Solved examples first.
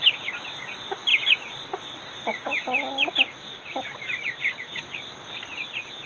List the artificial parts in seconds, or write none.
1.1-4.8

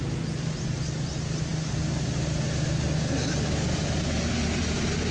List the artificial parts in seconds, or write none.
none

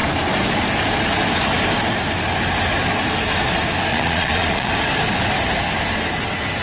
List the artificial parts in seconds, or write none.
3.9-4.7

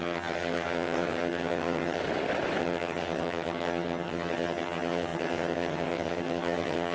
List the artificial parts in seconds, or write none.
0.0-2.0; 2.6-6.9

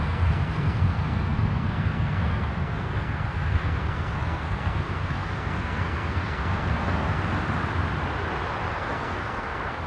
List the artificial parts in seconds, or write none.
0.0-7.3; 8.7-9.9

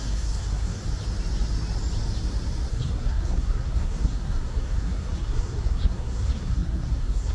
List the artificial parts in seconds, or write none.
0.0-0.8; 2.7-7.3

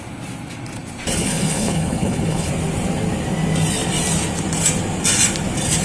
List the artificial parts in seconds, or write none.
1.2-2.5

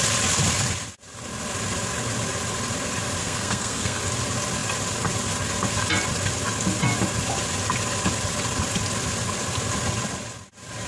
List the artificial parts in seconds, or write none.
3.2-4.0